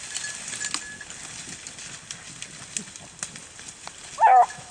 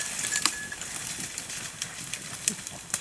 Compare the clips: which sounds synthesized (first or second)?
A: second